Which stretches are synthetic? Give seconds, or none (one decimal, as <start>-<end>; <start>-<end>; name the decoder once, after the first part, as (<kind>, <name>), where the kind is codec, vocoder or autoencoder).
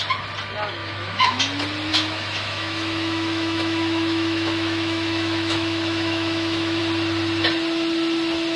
0.8-1.4 (autoencoder, DAC-VAE); 1.9-6.8